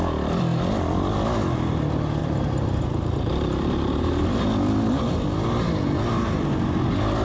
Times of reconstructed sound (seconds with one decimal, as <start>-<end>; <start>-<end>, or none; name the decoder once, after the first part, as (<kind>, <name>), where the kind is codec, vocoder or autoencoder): 2.2-4.2 (vocoder, BigVGAN v2)